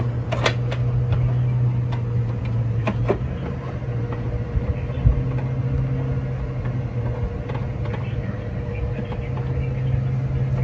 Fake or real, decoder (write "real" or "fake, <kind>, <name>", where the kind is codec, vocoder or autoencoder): real